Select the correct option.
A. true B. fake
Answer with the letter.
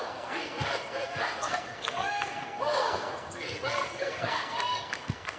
B